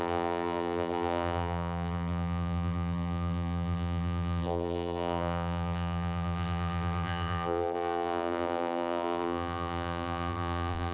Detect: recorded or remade remade